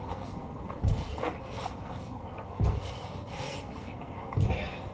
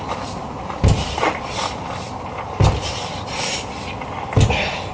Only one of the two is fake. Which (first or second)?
first